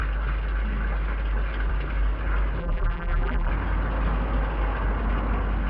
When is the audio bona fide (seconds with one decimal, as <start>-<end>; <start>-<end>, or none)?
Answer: 0.0-2.6; 3.5-5.7